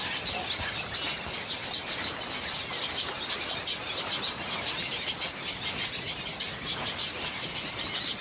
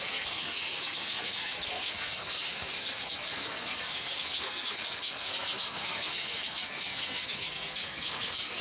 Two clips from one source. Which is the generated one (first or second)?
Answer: second